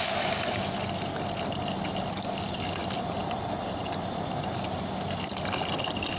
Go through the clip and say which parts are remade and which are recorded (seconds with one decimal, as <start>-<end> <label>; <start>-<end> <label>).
0.0-6.2 recorded